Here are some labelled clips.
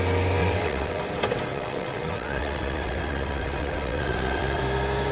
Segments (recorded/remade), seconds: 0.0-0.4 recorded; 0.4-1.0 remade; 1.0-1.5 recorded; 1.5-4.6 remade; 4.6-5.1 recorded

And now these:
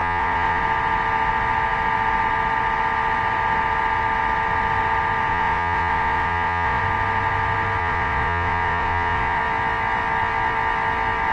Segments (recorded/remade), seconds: 0.0-0.6 remade; 0.6-5.3 recorded; 5.3-6.8 remade; 6.8-7.8 recorded; 7.8-9.4 remade; 9.4-11.3 recorded

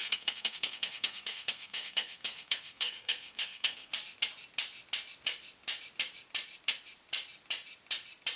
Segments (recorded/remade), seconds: 0.0-3.9 remade; 3.9-8.4 recorded

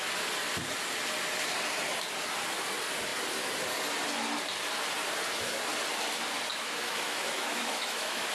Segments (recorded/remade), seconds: 0.0-6.5 recorded; 6.5-8.3 remade

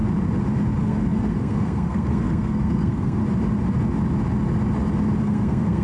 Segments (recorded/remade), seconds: 0.0-0.8 recorded; 0.8-3.2 remade; 3.2-5.2 recorded; 5.2-5.8 remade